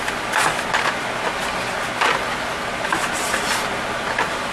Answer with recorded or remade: recorded